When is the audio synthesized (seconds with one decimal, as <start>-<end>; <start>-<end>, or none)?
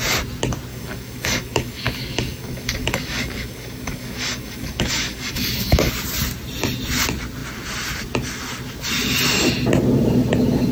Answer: 0.7-5.9